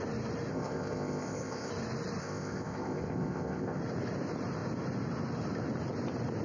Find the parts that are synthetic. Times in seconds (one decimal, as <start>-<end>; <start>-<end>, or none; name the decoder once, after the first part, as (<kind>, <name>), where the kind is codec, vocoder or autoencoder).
0.5-1.7 (codec, ZipCodec); 2.2-3.8